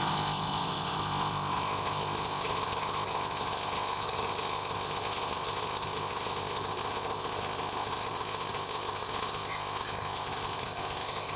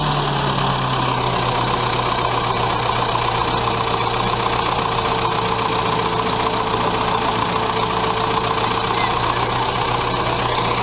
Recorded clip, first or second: second